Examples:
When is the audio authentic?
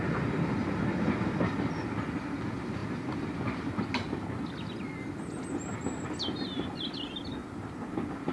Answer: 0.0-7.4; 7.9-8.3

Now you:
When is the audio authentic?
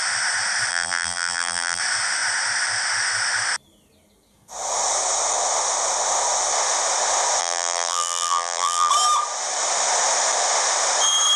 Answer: 0.0-0.7; 1.8-7.4; 8.9-11.4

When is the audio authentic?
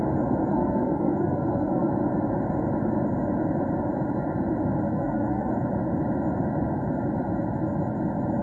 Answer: 0.0-0.5; 1.9-4.9; 5.5-8.4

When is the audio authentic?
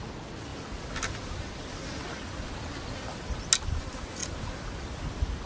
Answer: 0.0-5.5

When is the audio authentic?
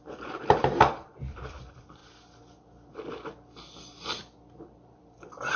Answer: 2.0-4.6